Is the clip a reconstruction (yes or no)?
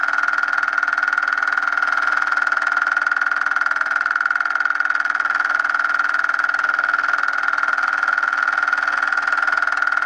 no